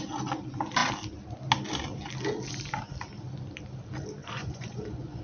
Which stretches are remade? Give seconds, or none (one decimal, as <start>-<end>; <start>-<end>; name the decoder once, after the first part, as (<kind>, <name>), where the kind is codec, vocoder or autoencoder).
4.2-5.2 (vocoder, Vocos)